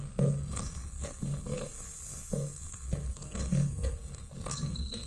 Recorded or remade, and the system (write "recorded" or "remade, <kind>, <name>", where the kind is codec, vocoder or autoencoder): remade, codec, SNAC